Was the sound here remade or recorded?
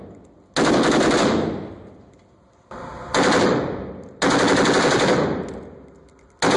recorded